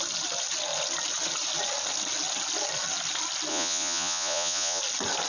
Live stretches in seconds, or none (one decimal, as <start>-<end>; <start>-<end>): 0.0-3.5; 4.8-5.3